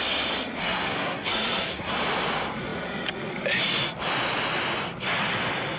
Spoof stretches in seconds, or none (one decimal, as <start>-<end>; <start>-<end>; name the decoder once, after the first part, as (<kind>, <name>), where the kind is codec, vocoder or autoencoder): 0.6-1.9 (codec, SNAC)